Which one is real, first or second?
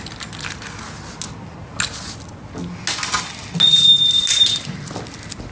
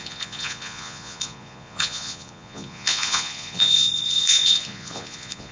first